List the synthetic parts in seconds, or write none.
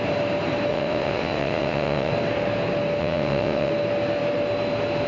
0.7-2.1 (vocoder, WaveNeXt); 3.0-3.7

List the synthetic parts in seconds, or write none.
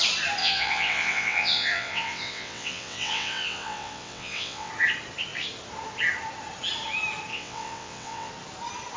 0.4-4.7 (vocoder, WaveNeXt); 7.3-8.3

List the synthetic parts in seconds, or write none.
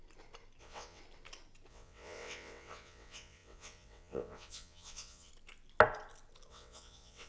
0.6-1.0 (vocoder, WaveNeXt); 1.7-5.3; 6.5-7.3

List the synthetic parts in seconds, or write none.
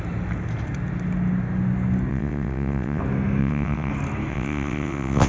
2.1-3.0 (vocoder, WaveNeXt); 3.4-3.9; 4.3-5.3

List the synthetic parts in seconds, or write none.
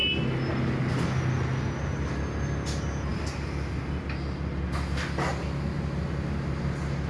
none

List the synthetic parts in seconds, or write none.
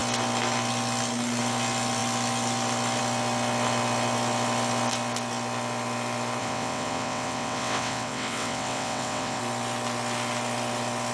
6.4-9.4 (vocoder, WaveNeXt)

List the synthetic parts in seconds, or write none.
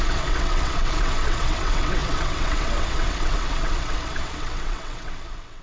0.0-5.6 (vocoder, WaveNeXt)